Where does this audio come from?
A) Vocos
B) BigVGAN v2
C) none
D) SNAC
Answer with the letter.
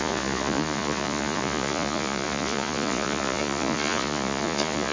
A